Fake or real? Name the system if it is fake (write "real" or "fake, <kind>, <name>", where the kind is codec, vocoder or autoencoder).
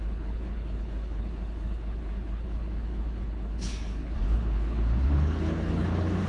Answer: fake, codec, HILCodec